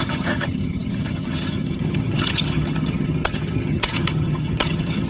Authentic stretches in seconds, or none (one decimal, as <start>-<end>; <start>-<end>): none